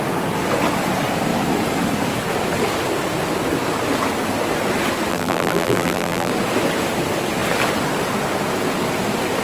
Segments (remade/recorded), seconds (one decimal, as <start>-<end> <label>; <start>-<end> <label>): 0.0-5.1 recorded; 5.1-6.3 remade; 6.3-9.4 recorded